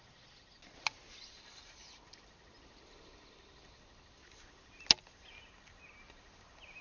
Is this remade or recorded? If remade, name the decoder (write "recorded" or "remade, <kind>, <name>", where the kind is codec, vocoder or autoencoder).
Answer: recorded